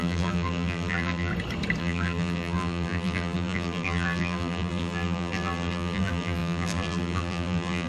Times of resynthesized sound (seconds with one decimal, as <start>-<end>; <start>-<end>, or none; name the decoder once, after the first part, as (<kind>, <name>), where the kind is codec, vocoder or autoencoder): 0.0-1.3 (vocoder, BigVGAN v2); 1.8-7.9

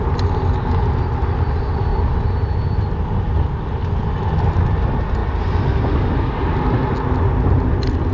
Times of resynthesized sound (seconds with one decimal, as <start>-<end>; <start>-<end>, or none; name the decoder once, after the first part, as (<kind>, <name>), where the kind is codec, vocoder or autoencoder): none

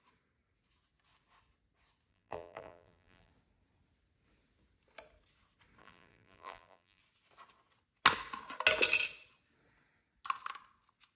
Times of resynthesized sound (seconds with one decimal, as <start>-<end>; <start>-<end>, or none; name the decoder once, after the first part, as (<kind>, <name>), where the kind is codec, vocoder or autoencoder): 2.1-3.3 (vocoder, BigVGAN v2); 5.8-7.0